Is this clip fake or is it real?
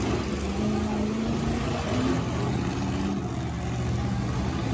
real